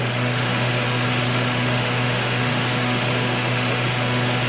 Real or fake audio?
fake